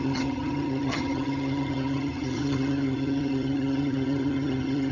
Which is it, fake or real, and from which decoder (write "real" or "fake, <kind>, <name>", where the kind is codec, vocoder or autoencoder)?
fake, vocoder, HiFi-GAN